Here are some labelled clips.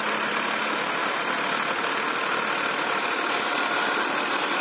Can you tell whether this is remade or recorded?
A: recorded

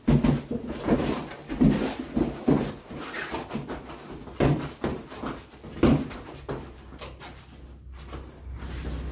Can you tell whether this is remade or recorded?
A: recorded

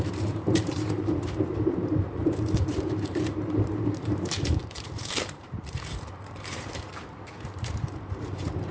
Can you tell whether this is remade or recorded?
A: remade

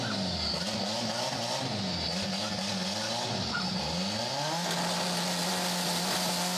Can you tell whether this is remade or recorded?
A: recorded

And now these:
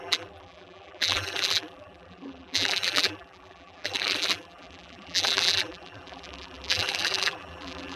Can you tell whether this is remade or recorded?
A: remade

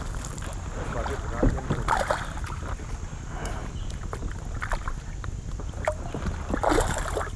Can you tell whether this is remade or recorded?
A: recorded